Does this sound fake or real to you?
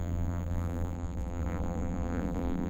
fake